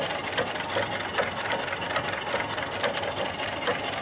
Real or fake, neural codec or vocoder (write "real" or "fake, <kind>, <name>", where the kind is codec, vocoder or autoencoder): real